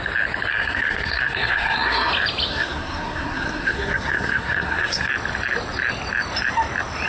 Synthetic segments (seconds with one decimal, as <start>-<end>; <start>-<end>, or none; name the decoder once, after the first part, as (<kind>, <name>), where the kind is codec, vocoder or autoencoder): 0.5-2.1 (codec, SNAC); 2.5-5.1